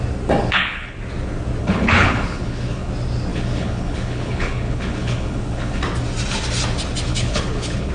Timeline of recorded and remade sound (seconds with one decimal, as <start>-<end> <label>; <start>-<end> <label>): 0.0-0.4 recorded; 0.4-1.0 remade; 1.0-1.6 recorded; 1.6-2.9 remade; 2.9-3.3 recorded; 3.3-5.8 remade; 5.8-7.1 recorded; 7.1-7.9 remade